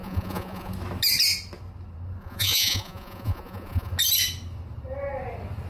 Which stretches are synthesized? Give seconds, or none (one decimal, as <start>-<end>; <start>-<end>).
0.0-0.7; 2.2-3.9